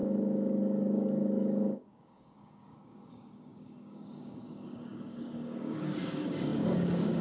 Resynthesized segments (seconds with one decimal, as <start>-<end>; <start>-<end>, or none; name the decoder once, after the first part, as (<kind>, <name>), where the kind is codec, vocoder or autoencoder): 0.0-7.2 (codec, DAC)